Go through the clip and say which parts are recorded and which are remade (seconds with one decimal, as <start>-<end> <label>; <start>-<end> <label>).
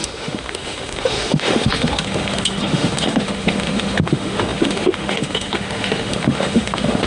0.0-7.1 remade